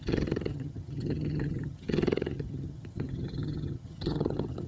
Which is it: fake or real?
fake